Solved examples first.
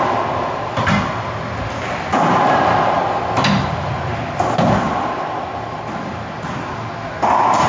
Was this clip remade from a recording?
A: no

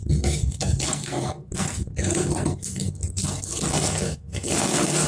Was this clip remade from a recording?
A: yes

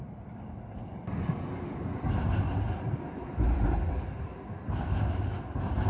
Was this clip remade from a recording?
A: no